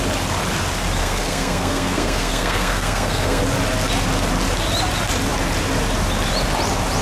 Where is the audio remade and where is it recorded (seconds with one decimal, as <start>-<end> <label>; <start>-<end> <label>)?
0.0-1.0 recorded; 1.0-3.4 remade; 3.4-7.0 recorded